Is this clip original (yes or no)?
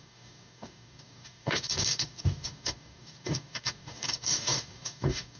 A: no